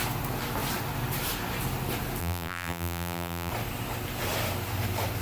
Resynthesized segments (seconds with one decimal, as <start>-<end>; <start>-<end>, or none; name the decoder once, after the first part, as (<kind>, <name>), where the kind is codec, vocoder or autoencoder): 2.2-3.5 (vocoder, BigVGAN v2)

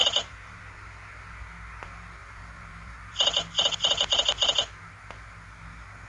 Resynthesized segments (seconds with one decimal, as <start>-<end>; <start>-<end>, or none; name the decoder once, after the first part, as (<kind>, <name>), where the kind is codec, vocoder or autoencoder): 0.0-0.6 (vocoder, BigVGAN v2); 2.2-4.1

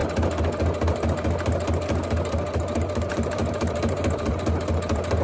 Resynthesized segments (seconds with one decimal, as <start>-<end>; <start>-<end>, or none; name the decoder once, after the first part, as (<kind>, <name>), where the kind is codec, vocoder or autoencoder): 2.9-5.2 (vocoder, BigVGAN v2)

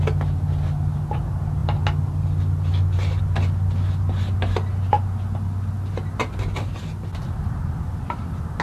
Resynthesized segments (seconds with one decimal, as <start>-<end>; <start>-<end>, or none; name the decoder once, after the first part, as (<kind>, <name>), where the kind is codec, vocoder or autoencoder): none

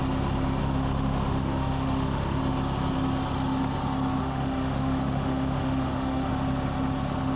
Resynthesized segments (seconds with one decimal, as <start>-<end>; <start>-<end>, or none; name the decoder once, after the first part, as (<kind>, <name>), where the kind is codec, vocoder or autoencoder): 0.6-2.4 (autoencoder, DAC-VAE); 4.2-6.3

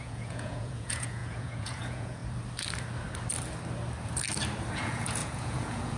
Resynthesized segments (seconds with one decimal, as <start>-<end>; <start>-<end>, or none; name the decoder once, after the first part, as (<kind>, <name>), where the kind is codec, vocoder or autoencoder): 0.0-2.2 (vocoder, Vocos); 4.7-6.0